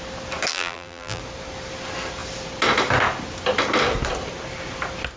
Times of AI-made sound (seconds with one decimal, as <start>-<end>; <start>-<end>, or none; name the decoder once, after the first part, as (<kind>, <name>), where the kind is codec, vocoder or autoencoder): 0.5-1.2 (vocoder, BigVGAN v2)